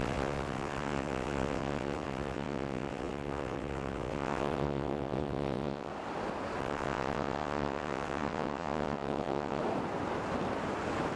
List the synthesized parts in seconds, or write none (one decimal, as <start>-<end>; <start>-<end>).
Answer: 0.0-5.9; 6.6-9.6